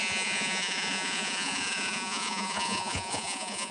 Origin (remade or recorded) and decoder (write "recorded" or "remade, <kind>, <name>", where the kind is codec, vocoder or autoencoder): remade, vocoder, Vocos